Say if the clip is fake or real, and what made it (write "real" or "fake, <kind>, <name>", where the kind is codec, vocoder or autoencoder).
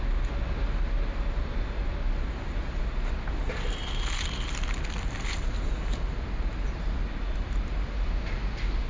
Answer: real